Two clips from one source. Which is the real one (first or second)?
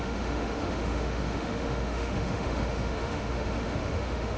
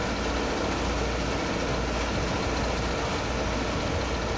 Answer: second